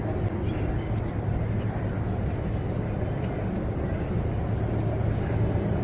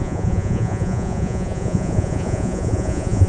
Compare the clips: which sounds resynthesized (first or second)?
second